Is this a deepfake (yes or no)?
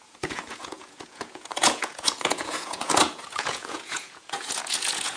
yes